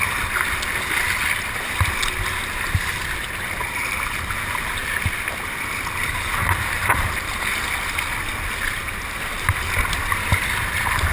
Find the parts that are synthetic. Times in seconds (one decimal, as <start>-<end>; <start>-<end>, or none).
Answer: 6.0-7.7